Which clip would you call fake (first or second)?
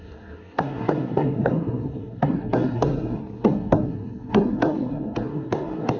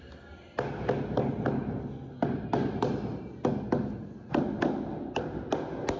first